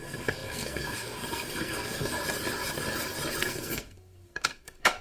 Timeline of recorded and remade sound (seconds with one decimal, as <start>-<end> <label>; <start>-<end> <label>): 0.0-2.2 remade; 2.2-3.3 recorded; 3.3-5.0 remade